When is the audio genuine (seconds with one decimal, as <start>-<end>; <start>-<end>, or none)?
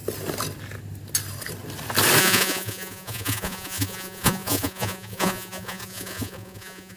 0.0-2.2